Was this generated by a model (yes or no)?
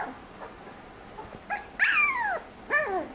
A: no